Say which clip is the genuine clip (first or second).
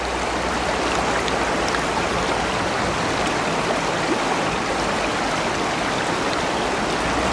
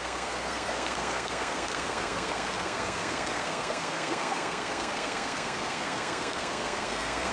first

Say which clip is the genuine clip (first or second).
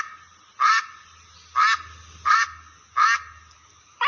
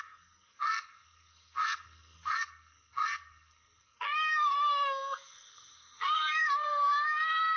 first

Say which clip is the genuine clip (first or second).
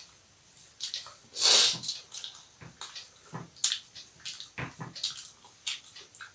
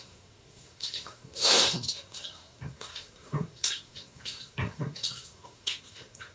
first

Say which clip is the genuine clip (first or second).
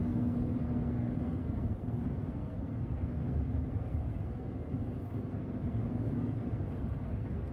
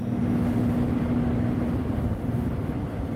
second